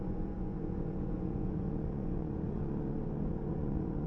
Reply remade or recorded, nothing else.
remade